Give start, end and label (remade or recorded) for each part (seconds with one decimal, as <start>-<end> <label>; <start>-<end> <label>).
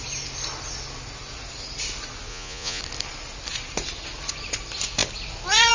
0.0-2.3 recorded; 2.3-2.8 remade; 2.8-5.7 recorded